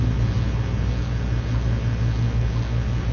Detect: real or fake real